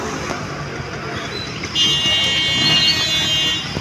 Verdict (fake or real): real